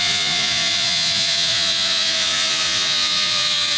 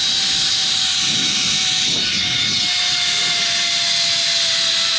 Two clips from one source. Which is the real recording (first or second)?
second